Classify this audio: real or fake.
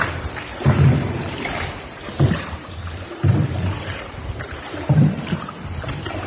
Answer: fake